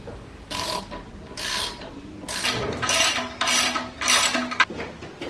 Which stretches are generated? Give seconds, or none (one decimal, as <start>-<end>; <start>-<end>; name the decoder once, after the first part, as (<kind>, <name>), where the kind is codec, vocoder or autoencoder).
0.0-0.8 (codec, DAC)